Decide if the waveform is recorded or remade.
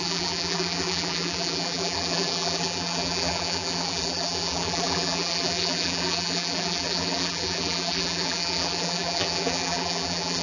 remade